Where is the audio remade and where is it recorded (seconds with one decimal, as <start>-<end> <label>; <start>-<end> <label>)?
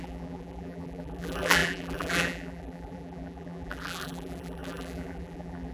0.0-5.7 remade